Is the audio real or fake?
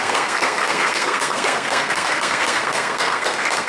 fake